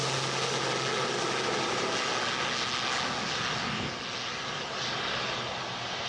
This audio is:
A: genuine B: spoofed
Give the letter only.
A